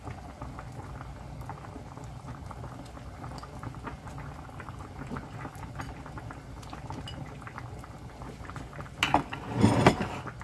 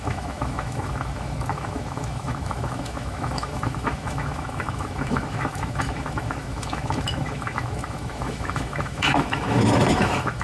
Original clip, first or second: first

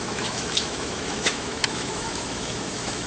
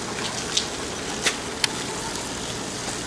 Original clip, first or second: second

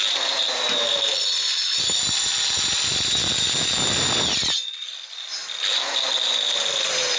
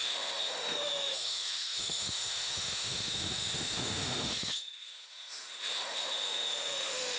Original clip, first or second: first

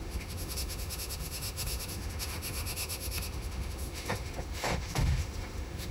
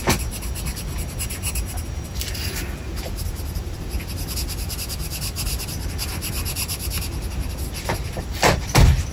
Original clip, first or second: second